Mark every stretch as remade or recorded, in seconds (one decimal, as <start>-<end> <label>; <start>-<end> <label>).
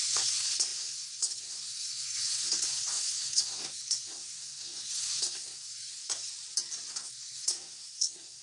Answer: 0.0-6.3 remade; 6.3-6.9 recorded; 6.9-8.4 remade